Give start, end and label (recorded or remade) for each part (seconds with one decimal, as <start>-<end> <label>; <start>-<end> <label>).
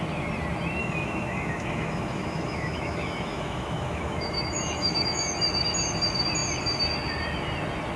0.0-0.8 recorded; 0.8-5.4 remade; 5.4-8.0 recorded